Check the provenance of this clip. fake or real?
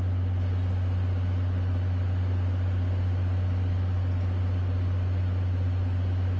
real